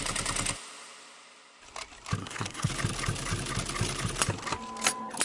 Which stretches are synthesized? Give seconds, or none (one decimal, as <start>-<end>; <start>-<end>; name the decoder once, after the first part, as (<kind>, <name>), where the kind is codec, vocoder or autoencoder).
2.2-2.7 (codec, SNAC)